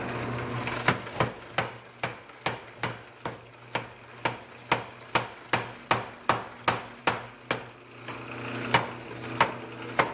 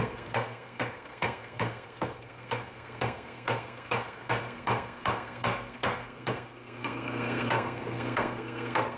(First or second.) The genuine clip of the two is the first